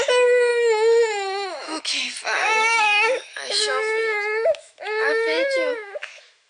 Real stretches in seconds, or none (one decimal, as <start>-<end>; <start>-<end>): 0.0-0.5; 1.8-2.4